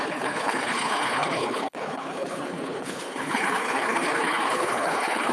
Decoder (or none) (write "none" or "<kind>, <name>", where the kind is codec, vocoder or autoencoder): codec, HILCodec